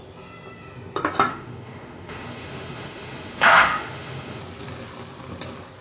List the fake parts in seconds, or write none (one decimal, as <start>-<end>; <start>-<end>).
1.3-4.4